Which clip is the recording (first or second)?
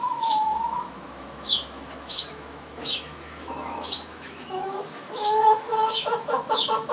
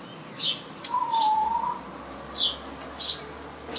second